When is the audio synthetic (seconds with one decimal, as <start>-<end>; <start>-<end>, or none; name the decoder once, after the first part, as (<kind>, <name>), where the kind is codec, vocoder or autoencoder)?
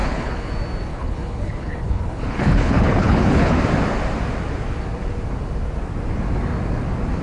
0.0-0.5 (codec, HILCodec); 0.9-3.6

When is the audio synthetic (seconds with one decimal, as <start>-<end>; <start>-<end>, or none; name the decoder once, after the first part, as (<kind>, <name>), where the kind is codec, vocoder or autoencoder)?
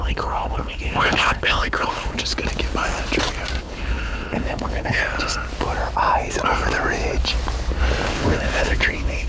0.0-2.3 (codec, HILCodec); 3.6-5.0; 8.1-9.3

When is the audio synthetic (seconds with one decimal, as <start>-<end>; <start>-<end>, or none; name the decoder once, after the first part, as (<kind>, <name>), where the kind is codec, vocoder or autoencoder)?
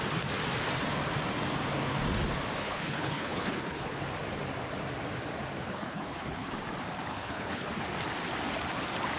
2.6-4.0 (codec, HILCodec); 5.7-6.5; 7.1-7.7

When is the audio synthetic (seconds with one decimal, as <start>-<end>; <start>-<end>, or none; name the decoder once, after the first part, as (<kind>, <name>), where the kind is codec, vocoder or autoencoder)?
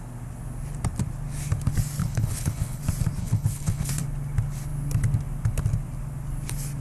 2.0-2.8 (codec, HILCodec); 3.2-3.9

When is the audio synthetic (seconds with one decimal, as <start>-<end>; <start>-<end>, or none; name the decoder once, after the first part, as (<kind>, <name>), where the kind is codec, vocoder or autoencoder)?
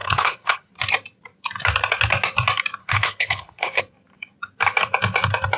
0.0-0.7 (codec, HILCodec); 2.8-3.8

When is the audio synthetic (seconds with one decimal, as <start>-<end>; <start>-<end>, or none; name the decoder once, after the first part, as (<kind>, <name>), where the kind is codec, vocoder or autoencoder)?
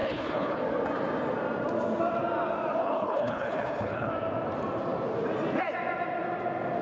0.0-0.6 (codec, HILCodec); 2.8-4.1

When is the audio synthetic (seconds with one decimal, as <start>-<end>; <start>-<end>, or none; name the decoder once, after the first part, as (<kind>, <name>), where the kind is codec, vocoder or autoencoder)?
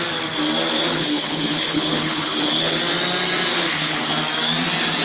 0.9-2.8 (codec, HILCodec); 3.5-4.1